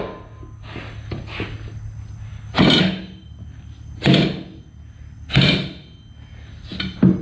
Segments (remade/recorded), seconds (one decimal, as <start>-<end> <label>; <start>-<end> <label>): 0.0-7.2 recorded